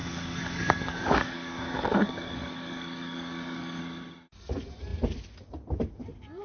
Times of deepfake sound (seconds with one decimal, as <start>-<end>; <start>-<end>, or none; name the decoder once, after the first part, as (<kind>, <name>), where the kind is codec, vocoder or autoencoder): 0.0-3.8 (codec, DAC)